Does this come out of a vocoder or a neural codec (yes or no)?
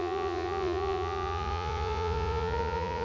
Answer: yes